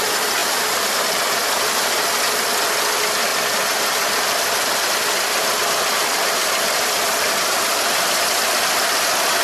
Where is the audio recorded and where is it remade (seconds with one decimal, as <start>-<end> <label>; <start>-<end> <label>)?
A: 0.0-0.4 recorded; 0.4-1.3 remade; 1.3-3.3 recorded; 3.3-7.8 remade; 7.8-9.4 recorded